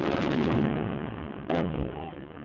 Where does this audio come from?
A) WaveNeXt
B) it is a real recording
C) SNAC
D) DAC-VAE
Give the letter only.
A